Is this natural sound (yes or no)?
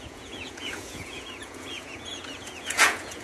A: no